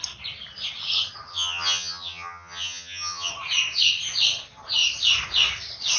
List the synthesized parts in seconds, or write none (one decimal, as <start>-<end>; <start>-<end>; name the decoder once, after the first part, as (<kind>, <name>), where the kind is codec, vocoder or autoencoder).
1.3-3.3 (vocoder, HiFi-GAN)